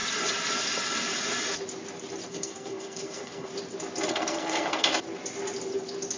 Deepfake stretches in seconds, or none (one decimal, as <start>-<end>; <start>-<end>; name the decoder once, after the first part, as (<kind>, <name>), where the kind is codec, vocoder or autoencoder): 2.3-3.5 (codec, SNAC); 4.1-4.9